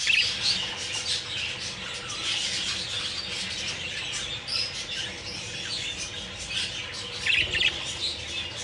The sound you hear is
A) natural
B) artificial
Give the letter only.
A